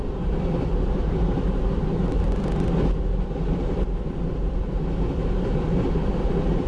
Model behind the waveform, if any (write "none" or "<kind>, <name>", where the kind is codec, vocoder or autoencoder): none